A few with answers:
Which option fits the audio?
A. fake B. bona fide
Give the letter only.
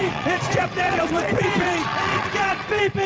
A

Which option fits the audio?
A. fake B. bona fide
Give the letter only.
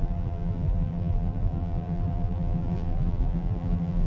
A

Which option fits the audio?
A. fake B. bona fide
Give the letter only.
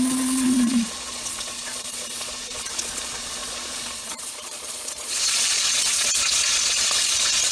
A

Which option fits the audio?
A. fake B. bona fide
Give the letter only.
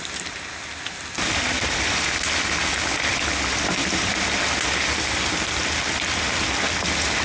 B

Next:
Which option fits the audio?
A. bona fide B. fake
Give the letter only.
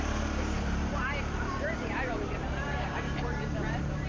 B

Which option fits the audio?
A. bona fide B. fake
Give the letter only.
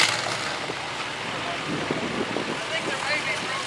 A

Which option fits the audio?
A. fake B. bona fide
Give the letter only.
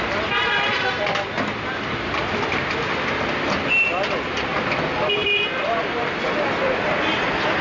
B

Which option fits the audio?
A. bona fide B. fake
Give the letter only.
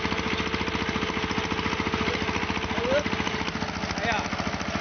A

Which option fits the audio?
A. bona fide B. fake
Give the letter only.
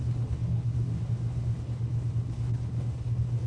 B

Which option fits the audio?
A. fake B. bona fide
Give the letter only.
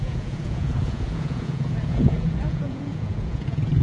A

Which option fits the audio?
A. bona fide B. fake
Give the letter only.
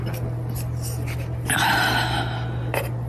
A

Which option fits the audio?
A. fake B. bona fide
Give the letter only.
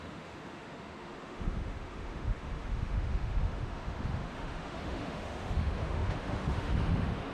A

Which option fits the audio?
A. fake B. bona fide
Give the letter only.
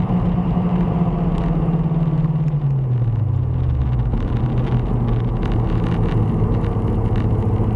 B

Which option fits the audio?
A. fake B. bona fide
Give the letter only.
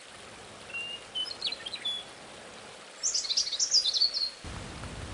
B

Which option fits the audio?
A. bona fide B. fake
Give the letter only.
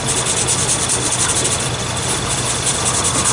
A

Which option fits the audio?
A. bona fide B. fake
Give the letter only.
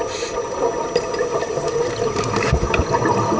A